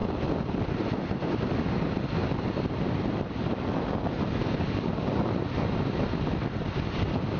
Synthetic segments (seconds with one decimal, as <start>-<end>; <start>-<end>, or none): none

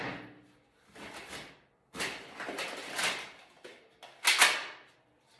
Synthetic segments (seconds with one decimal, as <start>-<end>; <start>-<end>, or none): none